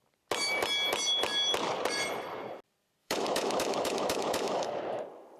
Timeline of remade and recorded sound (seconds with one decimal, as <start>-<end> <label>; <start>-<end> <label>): 0.0-3.0 recorded; 3.0-4.7 remade; 4.7-5.4 recorded